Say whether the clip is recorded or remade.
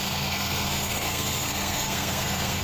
remade